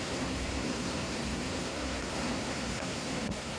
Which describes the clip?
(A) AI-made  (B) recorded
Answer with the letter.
A